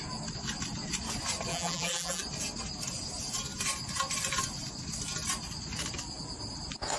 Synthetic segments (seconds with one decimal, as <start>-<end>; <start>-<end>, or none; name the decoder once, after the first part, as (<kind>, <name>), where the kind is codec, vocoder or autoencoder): 1.5-2.2 (vocoder, BigVGAN v2)